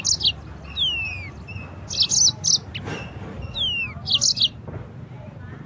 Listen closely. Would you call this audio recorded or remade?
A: recorded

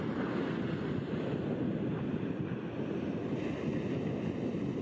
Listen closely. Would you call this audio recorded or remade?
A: recorded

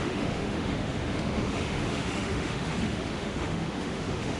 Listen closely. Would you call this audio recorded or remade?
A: remade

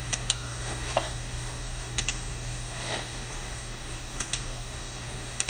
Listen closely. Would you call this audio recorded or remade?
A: remade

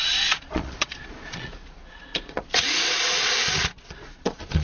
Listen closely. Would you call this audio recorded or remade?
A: remade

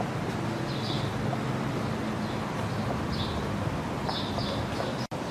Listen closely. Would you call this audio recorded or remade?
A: recorded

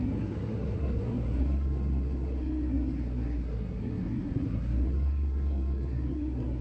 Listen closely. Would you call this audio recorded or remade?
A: remade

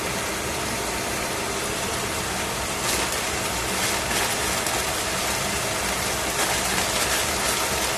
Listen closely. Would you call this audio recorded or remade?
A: recorded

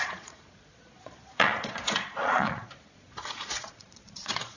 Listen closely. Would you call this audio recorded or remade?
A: remade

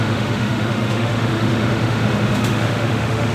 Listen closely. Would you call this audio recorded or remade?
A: remade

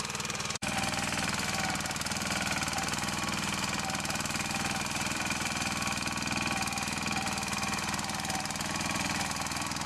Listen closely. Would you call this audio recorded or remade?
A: remade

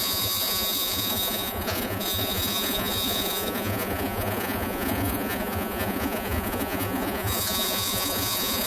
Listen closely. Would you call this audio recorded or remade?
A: remade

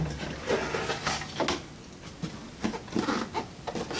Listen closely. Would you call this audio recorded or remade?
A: recorded